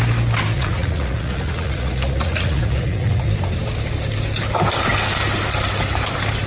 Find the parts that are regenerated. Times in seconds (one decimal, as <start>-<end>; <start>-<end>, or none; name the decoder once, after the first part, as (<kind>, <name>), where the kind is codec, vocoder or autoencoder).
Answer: 0.5-3.3 (vocoder, Vocos)